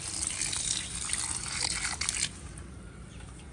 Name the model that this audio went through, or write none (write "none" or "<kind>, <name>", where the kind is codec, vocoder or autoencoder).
none